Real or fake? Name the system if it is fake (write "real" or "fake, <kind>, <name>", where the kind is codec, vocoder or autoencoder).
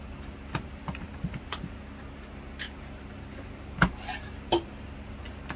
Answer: real